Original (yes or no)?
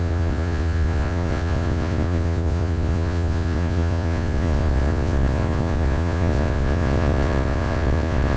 no